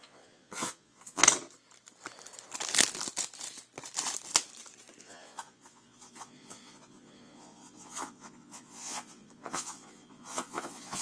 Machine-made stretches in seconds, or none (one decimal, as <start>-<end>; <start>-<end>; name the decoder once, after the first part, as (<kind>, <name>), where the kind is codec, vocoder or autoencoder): 0.0-1.2 (vocoder, Vocos); 5.0-11.0